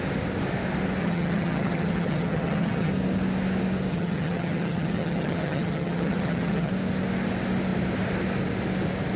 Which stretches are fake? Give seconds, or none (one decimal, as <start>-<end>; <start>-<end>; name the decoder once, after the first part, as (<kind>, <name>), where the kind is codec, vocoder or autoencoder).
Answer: 1.0-2.9 (vocoder, HiFi-GAN); 3.9-6.7